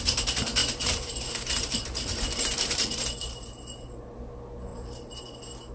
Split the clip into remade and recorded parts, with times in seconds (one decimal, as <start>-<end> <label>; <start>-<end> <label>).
0.0-0.6 recorded; 0.6-4.0 remade; 4.0-4.7 recorded; 4.7-5.2 remade; 5.2-5.7 recorded

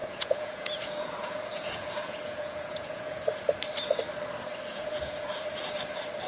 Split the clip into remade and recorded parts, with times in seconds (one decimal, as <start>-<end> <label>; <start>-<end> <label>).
0.0-3.4 remade; 3.4-4.7 recorded; 4.7-5.3 remade; 5.3-6.3 recorded

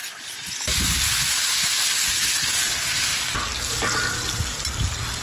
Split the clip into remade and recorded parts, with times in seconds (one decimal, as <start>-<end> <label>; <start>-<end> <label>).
0.0-5.2 recorded

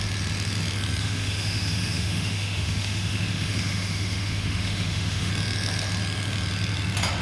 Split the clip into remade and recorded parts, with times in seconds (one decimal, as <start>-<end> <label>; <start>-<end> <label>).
0.0-1.0 recorded; 1.0-5.3 remade; 5.3-7.2 recorded

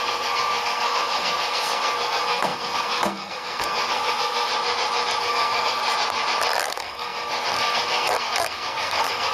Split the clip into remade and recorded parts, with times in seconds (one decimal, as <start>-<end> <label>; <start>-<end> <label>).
0.0-4.5 remade; 4.5-5.2 recorded; 5.2-5.8 remade; 5.8-6.6 recorded; 6.6-9.3 remade

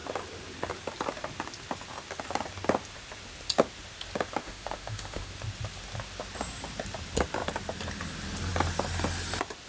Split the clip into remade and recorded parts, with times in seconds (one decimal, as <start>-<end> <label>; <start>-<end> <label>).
0.0-4.4 recorded; 4.4-5.3 remade; 5.3-9.7 recorded

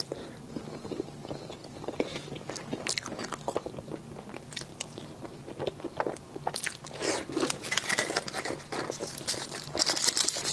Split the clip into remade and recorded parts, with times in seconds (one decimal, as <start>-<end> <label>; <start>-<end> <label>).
0.0-10.5 recorded

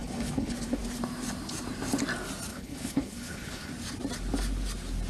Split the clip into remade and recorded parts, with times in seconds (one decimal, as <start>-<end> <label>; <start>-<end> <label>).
0.0-0.8 remade; 0.8-2.5 recorded; 2.5-3.7 remade; 3.7-5.1 recorded